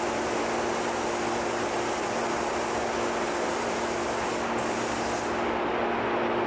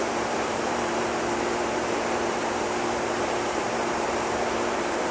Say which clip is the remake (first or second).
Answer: second